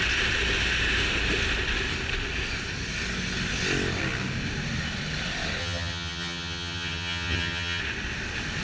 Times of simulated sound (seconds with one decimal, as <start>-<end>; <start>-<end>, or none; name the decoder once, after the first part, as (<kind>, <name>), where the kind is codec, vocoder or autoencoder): 5.6-7.8 (vocoder, HiFi-GAN)

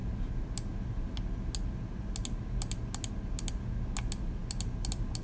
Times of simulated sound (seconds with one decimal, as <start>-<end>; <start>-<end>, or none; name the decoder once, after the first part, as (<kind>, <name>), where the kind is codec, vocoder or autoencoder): none